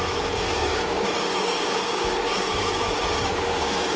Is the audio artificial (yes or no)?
yes